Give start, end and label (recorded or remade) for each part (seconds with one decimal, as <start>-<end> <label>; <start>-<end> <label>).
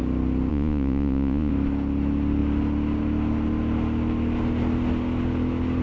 0.0-0.5 recorded; 0.5-1.5 remade; 1.5-5.8 recorded